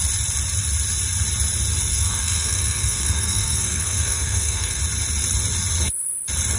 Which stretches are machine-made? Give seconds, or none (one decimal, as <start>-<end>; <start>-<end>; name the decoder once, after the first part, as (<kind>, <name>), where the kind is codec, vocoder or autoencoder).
1.9-4.8 (codec, SNAC)